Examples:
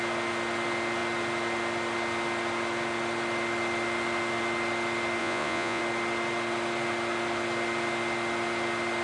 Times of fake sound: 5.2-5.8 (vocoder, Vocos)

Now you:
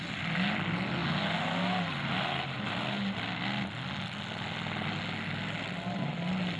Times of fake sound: none

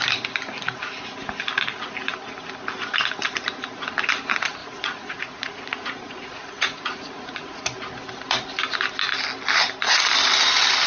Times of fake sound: 4.6-7.6 (vocoder, Vocos)

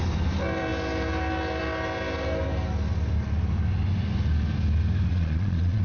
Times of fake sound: 5.1-5.8 (vocoder, Vocos)

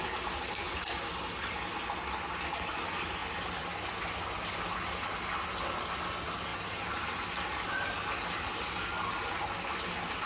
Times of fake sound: none

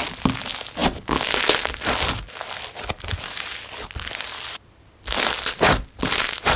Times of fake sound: none